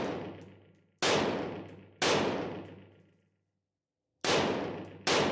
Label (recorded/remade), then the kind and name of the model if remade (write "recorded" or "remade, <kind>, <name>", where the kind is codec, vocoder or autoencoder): recorded